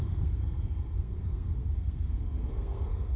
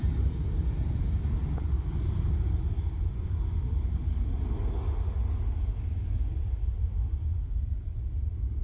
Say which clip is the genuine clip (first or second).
second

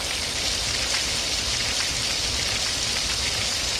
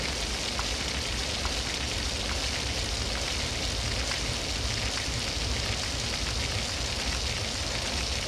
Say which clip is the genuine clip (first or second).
second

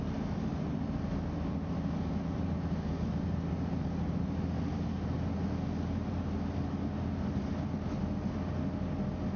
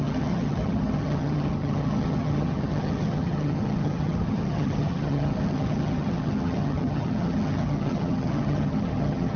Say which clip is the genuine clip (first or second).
first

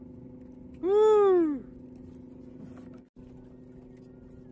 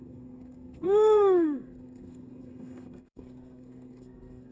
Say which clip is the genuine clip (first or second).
first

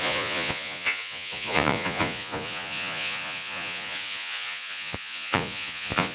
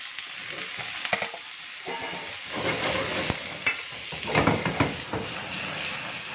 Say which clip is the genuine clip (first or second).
second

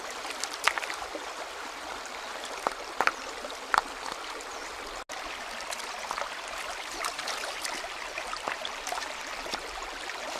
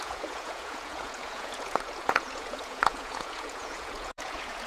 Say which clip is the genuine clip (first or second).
first